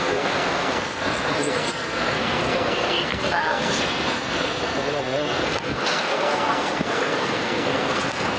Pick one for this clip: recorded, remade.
remade